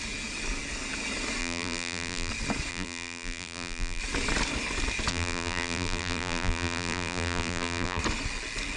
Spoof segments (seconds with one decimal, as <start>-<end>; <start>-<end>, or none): 1.4-2.3; 2.7-4.0; 5.1-8.0